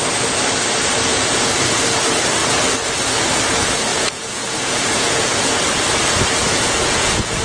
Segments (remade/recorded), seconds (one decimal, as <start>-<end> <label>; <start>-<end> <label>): 0.0-1.1 recorded; 1.1-1.8 remade; 1.8-3.9 recorded; 3.9-5.6 remade; 5.6-6.4 recorded; 6.4-7.4 remade